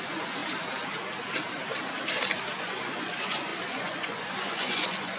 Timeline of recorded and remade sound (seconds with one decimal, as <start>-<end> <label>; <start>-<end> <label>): 0.0-0.4 remade; 0.4-2.6 recorded; 2.6-5.2 remade